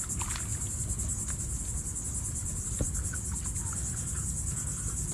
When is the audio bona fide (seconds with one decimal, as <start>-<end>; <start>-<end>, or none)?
0.0-5.1